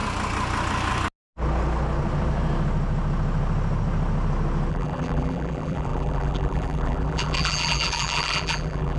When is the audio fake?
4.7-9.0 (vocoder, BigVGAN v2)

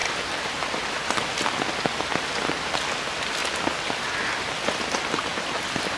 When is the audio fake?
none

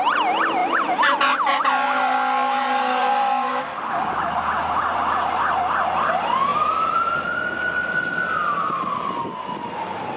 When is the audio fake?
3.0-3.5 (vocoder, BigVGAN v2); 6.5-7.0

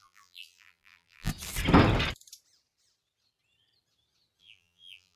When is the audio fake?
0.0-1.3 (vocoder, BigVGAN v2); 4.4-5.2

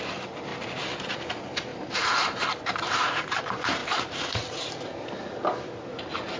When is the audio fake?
0.5-1.1 (vocoder, BigVGAN v2); 1.7-3.4

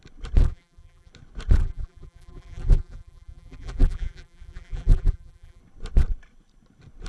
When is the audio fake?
0.4-1.1 (vocoder, BigVGAN v2); 1.6-5.6

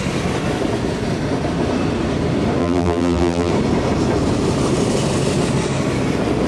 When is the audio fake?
2.6-3.5 (vocoder, BigVGAN v2)

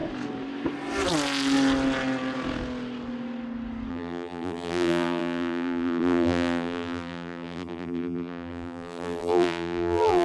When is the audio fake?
3.9-10.2 (vocoder, BigVGAN v2)